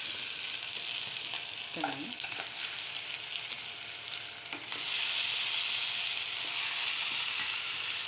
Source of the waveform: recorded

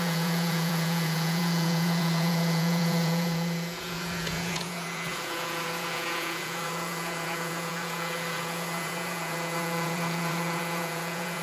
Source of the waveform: remade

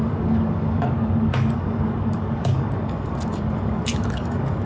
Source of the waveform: remade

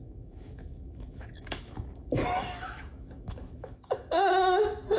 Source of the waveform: remade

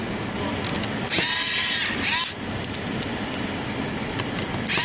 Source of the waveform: recorded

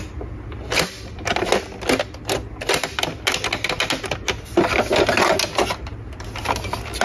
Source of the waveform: recorded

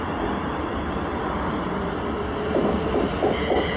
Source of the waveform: recorded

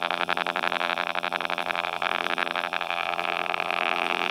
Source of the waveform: remade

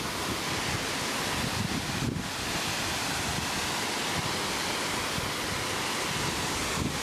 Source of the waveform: recorded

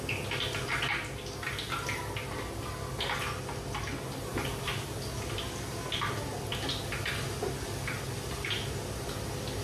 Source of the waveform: recorded